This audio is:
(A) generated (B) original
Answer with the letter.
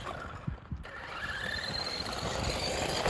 A